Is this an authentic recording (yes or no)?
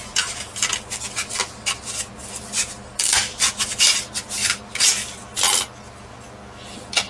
yes